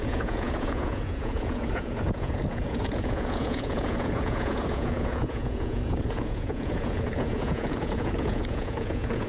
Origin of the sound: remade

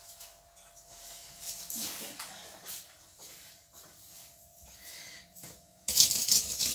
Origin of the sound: remade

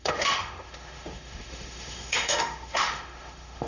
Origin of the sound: remade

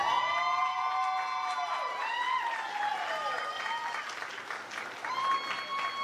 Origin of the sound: recorded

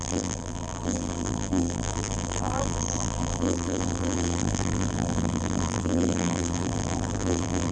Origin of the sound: remade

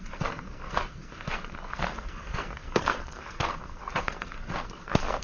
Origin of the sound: remade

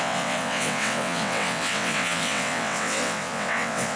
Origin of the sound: remade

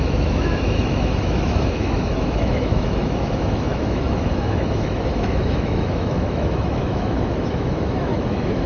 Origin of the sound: remade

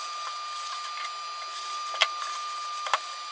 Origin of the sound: recorded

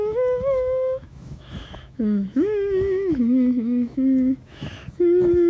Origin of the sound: remade